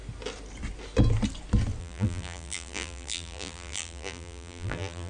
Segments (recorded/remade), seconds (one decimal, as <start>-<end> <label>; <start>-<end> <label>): 0.0-1.8 recorded; 1.8-5.1 remade